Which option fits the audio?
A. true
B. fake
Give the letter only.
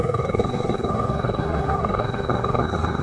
B